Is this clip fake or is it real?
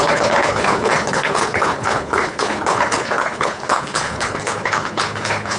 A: fake